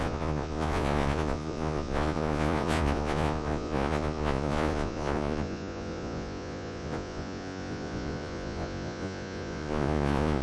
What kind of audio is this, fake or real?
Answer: fake